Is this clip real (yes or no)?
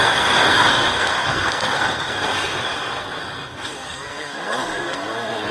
no